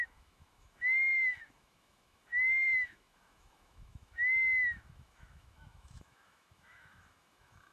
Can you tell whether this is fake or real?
fake